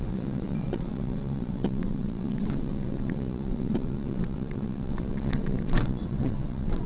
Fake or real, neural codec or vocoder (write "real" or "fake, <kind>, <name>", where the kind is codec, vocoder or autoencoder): fake, vocoder, WaveNeXt